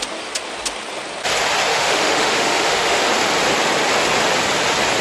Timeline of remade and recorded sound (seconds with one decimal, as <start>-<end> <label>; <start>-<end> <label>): 0.0-1.7 recorded; 1.7-3.0 remade; 3.0-5.0 recorded